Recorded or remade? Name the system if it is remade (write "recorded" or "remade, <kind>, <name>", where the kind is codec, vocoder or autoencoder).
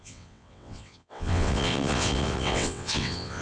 remade, vocoder, WaveNeXt